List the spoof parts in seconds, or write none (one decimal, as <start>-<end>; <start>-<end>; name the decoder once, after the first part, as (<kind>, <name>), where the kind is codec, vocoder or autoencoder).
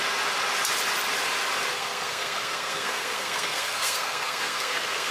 1.7-5.1 (codec, SNAC)